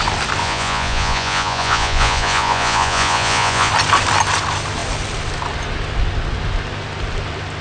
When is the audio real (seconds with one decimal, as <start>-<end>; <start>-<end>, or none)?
0.0-0.4; 3.7-7.6